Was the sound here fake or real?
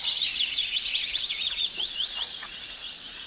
fake